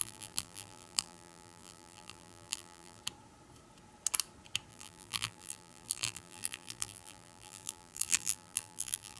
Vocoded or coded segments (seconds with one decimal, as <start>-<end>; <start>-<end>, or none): 0.0-3.0; 4.7-9.2